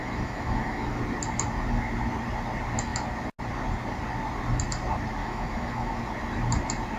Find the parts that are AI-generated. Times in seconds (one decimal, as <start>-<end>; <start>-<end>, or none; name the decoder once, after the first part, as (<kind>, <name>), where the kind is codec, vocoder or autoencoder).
0.0-1.0 (autoencoder, DAC-VAE); 5.2-6.0

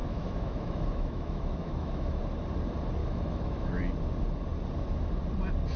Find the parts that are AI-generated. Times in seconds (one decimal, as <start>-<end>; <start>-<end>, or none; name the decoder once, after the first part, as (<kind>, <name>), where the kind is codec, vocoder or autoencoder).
0.0-2.2 (autoencoder, DAC-VAE); 3.0-3.7

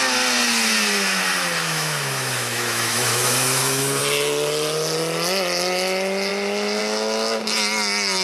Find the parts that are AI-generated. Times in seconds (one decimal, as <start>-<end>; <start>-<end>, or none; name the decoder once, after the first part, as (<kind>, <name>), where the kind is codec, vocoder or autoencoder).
1.6-4.0 (autoencoder, DAC-VAE)

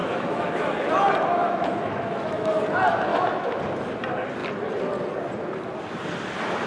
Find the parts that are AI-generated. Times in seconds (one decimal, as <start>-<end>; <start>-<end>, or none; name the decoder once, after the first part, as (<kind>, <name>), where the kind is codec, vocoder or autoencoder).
0.0-0.9 (autoencoder, DAC-VAE); 1.4-2.6; 3.1-3.6